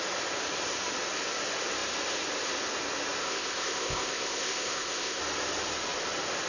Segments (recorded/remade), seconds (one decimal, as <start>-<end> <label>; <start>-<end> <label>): 0.0-3.2 recorded; 3.2-5.2 remade; 5.2-6.5 recorded